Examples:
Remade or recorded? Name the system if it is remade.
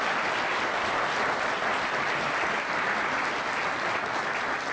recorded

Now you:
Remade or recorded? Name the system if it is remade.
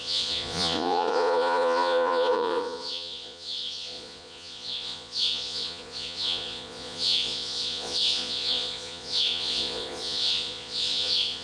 remade, vocoder, Vocos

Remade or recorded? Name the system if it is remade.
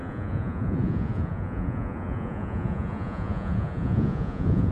remade, vocoder, Vocos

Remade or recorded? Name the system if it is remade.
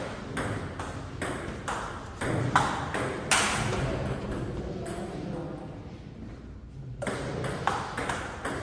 recorded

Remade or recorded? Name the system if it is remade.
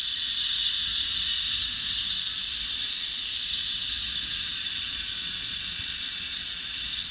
recorded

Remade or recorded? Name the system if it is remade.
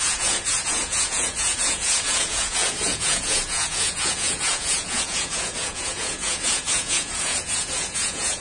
remade, vocoder, Vocos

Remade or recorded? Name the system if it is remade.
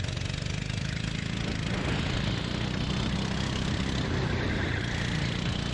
recorded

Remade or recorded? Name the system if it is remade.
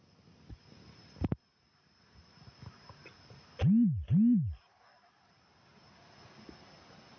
recorded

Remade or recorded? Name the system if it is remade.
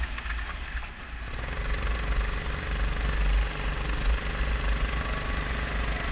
recorded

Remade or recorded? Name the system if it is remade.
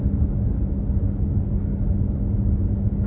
recorded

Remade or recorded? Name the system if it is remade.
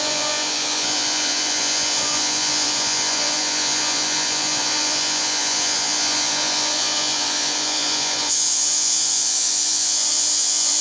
remade, vocoder, Vocos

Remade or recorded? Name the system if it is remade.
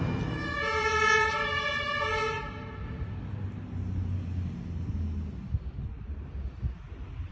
recorded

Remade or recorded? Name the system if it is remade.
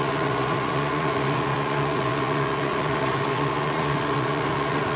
remade, vocoder, Vocos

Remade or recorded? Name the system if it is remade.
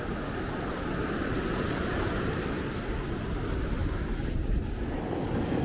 recorded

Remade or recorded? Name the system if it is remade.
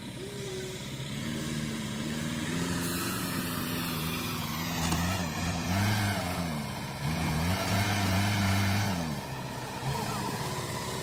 remade, vocoder, Vocos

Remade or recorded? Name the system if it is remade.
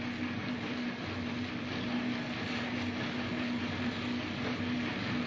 recorded